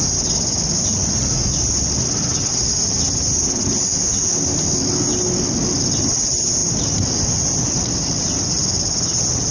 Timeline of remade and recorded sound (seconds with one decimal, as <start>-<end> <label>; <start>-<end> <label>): 0.0-9.5 recorded